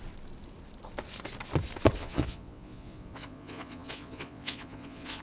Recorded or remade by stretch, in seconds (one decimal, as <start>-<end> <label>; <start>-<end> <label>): 0.0-2.0 recorded; 2.0-5.2 remade